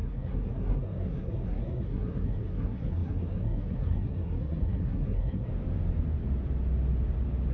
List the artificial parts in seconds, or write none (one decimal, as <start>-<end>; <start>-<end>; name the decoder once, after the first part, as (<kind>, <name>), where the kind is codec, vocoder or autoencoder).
0.0-5.5 (codec, SNAC)